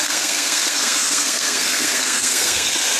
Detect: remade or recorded remade